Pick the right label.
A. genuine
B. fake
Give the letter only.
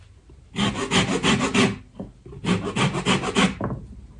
A